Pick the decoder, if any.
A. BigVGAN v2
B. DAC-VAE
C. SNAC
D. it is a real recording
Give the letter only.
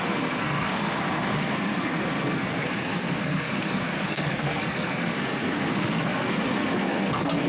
C